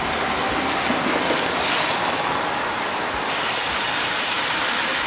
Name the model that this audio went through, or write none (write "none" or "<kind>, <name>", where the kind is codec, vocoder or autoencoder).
none